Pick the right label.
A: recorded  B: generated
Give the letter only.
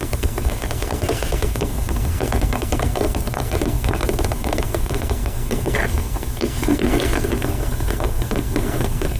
B